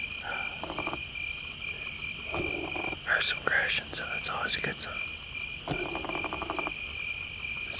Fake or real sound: real